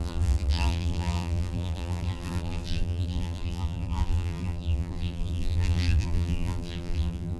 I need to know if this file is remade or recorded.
remade